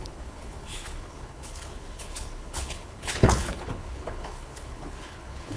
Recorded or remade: remade